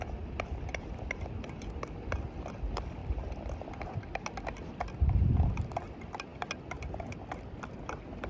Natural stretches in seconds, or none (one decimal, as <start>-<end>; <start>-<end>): 0.0-3.0; 3.7-8.3